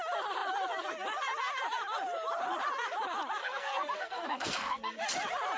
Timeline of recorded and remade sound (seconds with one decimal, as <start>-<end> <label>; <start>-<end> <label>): 0.0-3.4 recorded; 3.4-5.0 remade; 5.0-5.6 recorded